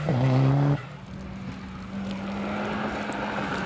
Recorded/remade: recorded